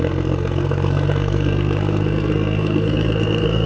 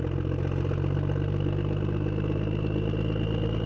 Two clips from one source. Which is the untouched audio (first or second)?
second